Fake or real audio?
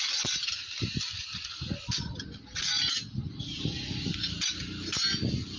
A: real